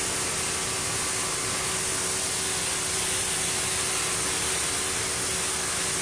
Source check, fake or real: real